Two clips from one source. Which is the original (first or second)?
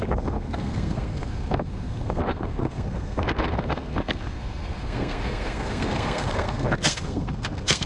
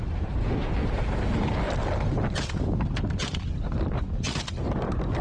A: second